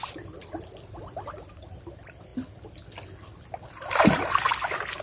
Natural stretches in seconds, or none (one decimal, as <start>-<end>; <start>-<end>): 0.0-5.0